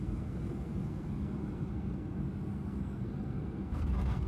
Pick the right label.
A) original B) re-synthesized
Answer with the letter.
B